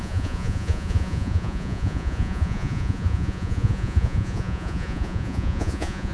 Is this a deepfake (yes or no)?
yes